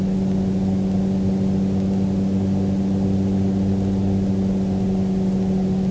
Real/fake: real